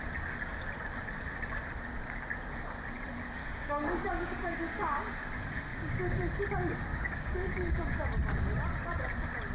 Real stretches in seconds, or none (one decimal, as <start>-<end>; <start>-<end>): 0.0-3.4; 5.0-5.7; 6.2-6.9; 8.0-9.5